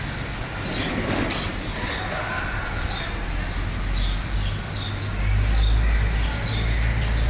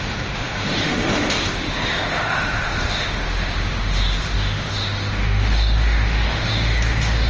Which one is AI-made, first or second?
second